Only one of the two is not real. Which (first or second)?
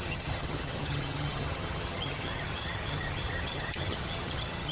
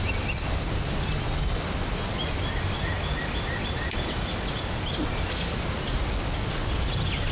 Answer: first